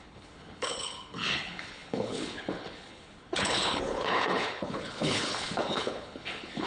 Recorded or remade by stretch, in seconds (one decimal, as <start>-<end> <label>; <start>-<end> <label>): 0.0-6.7 remade